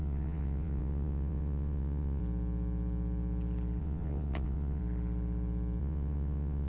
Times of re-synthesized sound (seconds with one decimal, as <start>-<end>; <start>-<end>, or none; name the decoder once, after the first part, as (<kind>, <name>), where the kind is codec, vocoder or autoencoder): 0.0-2.2 (vocoder, WaveNeXt); 3.8-4.8; 5.8-6.7